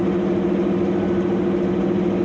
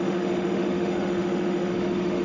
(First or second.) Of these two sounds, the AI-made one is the second